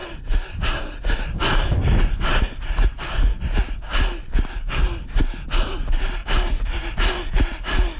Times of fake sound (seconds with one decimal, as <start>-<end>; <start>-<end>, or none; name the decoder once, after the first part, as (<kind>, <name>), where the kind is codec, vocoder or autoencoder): none